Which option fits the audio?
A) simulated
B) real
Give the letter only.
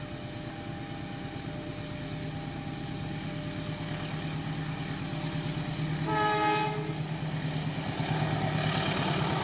B